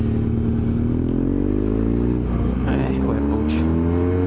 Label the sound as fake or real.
real